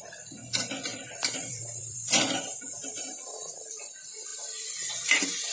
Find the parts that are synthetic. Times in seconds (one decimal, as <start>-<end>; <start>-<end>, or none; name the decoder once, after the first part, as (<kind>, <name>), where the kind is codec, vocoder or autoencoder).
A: 0.9-3.5 (vocoder, BigVGAN v2)